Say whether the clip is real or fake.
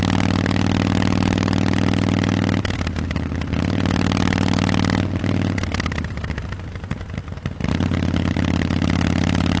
real